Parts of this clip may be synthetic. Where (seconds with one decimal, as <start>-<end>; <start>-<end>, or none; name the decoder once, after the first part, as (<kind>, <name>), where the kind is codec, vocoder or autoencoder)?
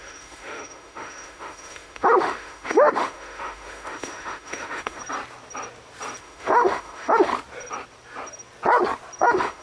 0.0-5.0 (autoencoder, DAC-VAE); 6.2-7.3; 9.2-9.6